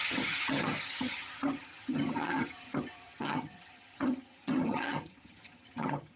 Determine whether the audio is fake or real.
fake